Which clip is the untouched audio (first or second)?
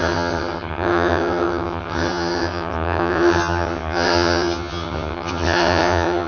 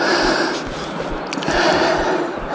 second